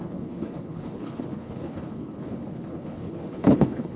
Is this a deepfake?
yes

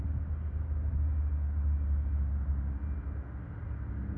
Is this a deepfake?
no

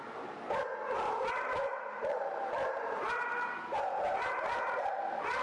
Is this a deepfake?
yes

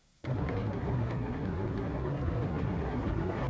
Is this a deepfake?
yes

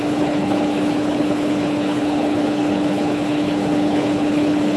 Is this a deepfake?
yes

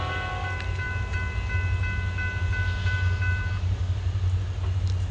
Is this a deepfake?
no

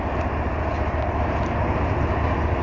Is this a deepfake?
no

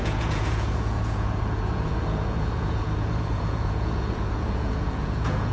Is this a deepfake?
yes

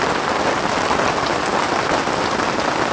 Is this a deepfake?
no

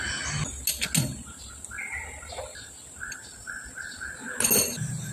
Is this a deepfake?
no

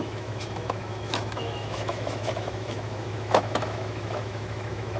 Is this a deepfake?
yes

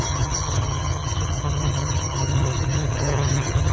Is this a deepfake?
yes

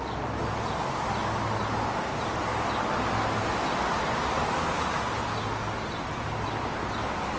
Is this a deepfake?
no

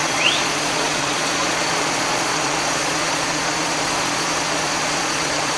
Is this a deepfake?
yes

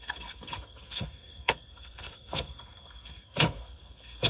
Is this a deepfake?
yes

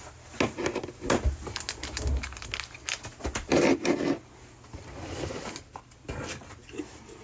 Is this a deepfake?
no